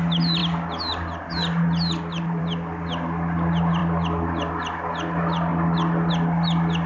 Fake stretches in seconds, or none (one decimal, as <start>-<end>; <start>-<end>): none

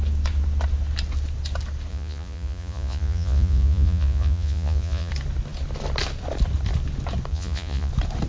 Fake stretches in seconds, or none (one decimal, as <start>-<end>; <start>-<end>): 1.9-5.1; 7.3-7.9

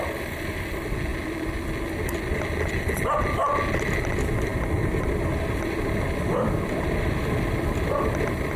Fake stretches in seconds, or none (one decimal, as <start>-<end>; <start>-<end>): none

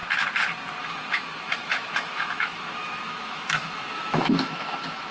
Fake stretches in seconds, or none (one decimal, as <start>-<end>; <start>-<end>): 0.8-5.1

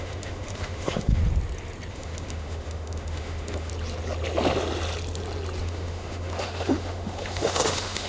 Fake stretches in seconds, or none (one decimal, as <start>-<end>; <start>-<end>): 0.0-1.2; 1.9-3.7; 5.6-8.1

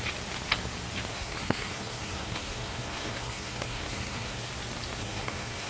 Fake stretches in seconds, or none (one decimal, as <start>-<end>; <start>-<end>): 1.1-4.5; 5.0-5.7

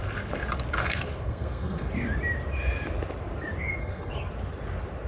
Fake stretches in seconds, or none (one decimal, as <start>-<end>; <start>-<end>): 0.8-1.9; 3.8-4.3

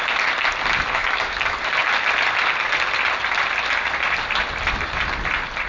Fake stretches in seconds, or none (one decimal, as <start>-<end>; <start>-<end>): none